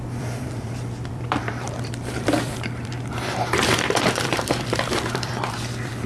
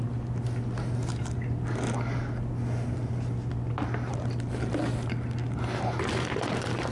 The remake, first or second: first